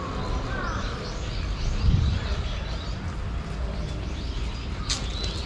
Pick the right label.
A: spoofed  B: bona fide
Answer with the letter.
B